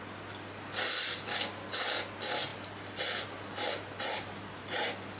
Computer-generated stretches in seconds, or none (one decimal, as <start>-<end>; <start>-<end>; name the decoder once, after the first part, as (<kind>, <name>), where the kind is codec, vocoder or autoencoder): none